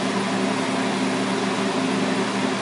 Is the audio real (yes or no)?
yes